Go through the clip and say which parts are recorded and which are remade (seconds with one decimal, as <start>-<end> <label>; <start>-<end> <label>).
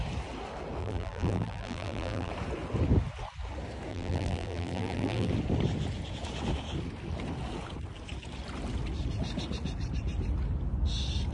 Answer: 0.0-0.8 recorded; 0.8-2.3 remade; 2.3-3.9 recorded; 3.9-5.3 remade; 5.3-11.3 recorded